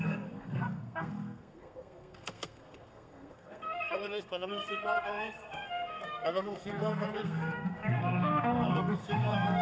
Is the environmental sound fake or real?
fake